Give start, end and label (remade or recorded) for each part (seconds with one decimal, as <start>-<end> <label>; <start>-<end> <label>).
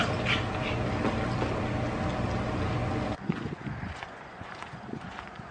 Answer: 0.0-2.8 recorded; 2.8-5.5 remade